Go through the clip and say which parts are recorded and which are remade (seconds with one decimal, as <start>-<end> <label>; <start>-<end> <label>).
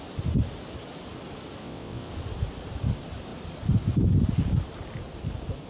0.0-1.6 recorded; 1.6-2.1 remade; 2.1-5.7 recorded